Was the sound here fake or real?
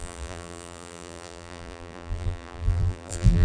fake